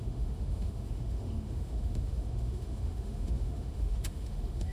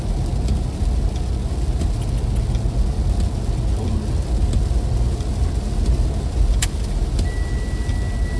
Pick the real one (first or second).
second